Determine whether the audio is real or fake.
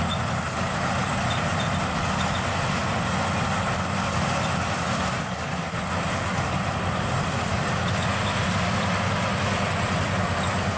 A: real